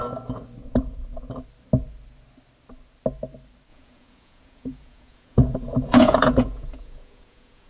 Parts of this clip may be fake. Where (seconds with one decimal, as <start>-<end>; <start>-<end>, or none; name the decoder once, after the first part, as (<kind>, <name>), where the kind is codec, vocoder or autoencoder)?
0.6-1.3 (vocoder, Vocos); 3.7-7.7